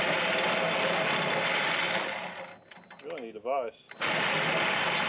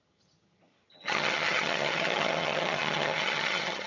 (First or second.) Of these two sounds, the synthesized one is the second